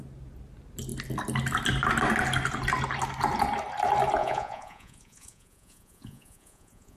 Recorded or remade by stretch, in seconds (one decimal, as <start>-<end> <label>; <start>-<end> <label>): 0.0-4.2 recorded; 4.2-7.0 remade